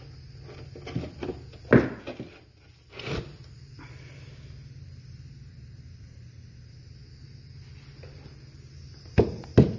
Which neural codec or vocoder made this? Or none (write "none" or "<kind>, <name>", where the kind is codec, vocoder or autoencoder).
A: none